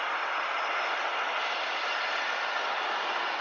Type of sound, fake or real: real